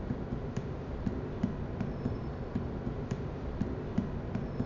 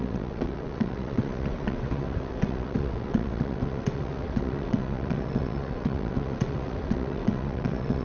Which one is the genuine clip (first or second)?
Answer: first